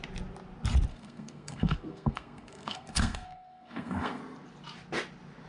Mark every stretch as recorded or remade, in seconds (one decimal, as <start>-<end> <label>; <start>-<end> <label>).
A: 0.0-0.9 recorded; 0.9-4.2 remade; 4.2-5.5 recorded